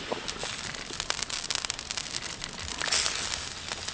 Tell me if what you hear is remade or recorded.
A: recorded